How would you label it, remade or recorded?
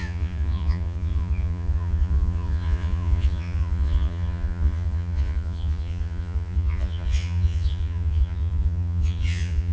remade